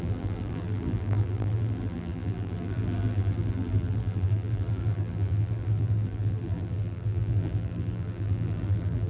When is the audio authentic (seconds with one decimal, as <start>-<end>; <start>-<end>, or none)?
none